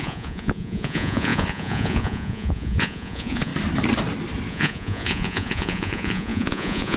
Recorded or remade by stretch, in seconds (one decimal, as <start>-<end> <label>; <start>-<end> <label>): 0.0-3.5 remade; 3.5-4.5 recorded; 4.5-7.0 remade